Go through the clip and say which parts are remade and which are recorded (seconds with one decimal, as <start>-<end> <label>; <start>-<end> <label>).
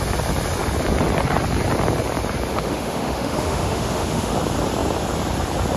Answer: 0.0-2.5 recorded; 2.5-4.3 remade; 4.3-5.8 recorded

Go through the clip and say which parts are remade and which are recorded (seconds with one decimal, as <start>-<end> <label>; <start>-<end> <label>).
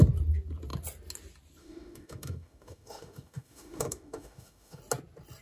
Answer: 0.0-1.6 recorded; 1.6-4.8 remade; 4.8-5.4 recorded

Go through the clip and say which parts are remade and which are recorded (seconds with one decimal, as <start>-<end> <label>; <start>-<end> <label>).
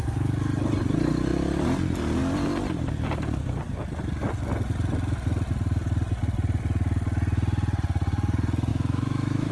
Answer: 0.0-8.7 recorded; 8.7-9.5 remade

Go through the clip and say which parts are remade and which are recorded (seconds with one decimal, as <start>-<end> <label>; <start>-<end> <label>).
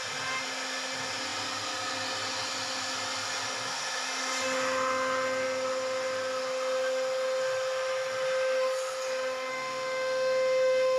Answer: 0.0-9.5 recorded; 9.5-11.0 remade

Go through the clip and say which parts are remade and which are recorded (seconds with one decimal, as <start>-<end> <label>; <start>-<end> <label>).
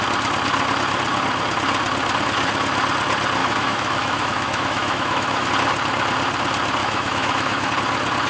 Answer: 0.0-3.4 recorded; 3.4-5.5 remade; 5.5-6.8 recorded; 6.8-7.7 remade; 7.7-8.3 recorded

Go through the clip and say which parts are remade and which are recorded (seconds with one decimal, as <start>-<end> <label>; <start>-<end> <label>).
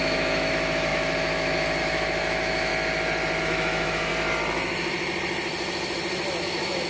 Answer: 0.0-2.7 remade; 2.7-3.4 recorded; 3.4-4.1 remade; 4.1-6.4 recorded; 6.4-6.9 remade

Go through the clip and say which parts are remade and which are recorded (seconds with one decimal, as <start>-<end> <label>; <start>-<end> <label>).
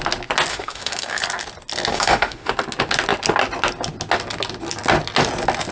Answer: 0.0-0.5 recorded; 0.5-1.2 remade; 1.2-1.9 recorded; 1.9-2.5 remade; 2.5-5.7 recorded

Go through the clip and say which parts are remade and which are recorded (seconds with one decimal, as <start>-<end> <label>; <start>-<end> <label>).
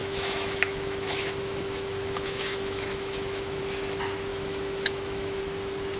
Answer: 0.0-3.6 remade; 3.6-4.3 recorded; 4.3-5.4 remade; 5.4-6.0 recorded